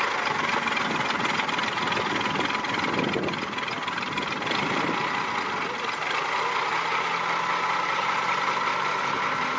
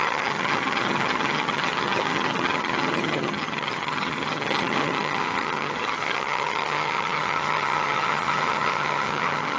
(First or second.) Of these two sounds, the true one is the first